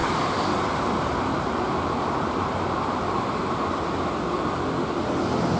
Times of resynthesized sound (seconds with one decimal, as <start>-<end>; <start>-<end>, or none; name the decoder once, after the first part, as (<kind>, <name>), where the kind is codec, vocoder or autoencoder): 0.0-3.4 (vocoder, BigVGAN v2)